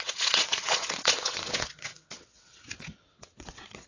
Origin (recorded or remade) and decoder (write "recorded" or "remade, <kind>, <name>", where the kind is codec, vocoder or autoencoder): remade, vocoder, WaveNeXt